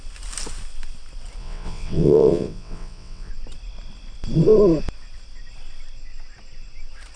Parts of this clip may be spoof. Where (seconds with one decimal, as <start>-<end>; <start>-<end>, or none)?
1.4-3.3